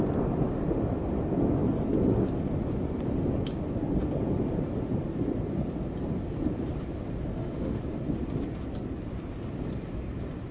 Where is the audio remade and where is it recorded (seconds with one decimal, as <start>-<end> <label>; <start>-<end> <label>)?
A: 0.0-7.3 recorded; 7.3-7.8 remade; 7.8-10.5 recorded